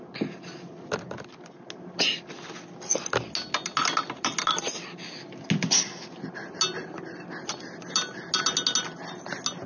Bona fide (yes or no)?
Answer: yes